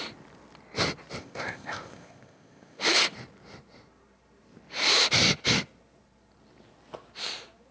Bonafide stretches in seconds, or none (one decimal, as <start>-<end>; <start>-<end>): 0.0-1.2; 2.8-7.7